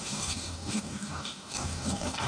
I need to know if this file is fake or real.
fake